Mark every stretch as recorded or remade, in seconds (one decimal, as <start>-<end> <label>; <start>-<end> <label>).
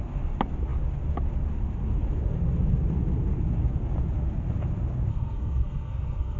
0.0-5.1 recorded; 5.1-6.4 remade